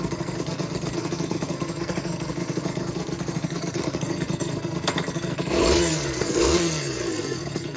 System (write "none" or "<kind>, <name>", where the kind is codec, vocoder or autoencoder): codec, SNAC